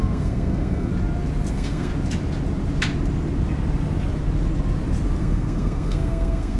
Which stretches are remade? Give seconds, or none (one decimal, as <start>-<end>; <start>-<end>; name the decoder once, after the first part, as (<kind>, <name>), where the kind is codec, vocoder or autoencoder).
0.0-0.9 (codec, SNAC); 1.5-1.9; 5.2-6.6